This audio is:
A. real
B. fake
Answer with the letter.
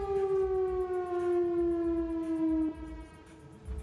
A